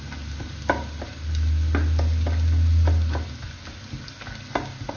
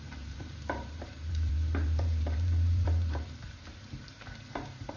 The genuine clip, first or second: first